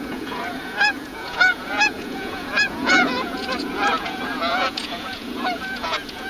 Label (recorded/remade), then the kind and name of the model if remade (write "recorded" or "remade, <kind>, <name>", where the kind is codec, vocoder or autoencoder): remade, vocoder, Vocos